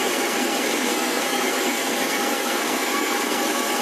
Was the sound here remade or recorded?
remade